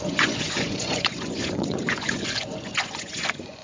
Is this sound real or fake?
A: fake